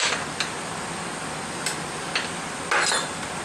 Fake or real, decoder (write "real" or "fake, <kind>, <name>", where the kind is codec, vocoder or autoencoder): real